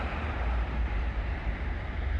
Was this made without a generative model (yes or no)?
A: no